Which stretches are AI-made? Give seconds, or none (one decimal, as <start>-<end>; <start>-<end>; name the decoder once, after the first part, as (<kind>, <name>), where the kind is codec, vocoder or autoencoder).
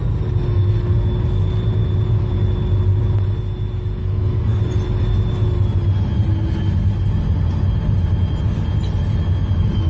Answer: 4.0-4.6 (codec, SNAC)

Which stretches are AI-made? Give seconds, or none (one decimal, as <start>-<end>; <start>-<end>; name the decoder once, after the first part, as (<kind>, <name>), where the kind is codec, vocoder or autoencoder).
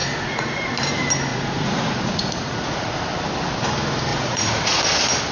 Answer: 0.0-0.7 (vocoder, Vocos); 1.3-3.0; 4.1-4.8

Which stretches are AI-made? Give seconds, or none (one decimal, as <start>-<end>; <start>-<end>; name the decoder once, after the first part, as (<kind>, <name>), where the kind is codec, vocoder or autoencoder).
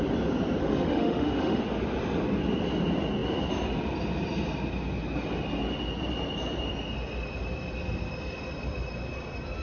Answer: 0.6-1.6 (autoencoder, DAC-VAE)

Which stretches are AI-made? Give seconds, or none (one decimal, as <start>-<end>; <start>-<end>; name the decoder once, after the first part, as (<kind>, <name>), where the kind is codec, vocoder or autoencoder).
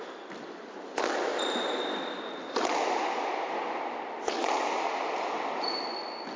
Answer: none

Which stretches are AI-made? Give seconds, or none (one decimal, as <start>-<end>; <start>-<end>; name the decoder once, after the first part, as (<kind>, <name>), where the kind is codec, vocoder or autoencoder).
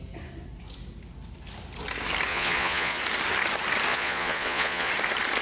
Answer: 2.3-3.0 (vocoder, Vocos); 3.9-4.9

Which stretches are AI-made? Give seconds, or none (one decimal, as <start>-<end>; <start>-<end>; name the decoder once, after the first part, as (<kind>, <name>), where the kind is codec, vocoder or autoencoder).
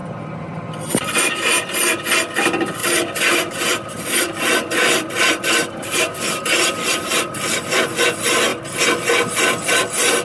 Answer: 2.8-8.0 (vocoder, BigVGAN v2)